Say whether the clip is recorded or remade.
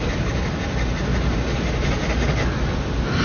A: recorded